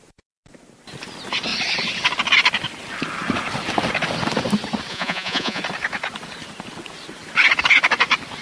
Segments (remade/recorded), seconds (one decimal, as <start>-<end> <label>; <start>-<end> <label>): 0.0-4.9 recorded; 4.9-5.6 remade; 5.6-8.4 recorded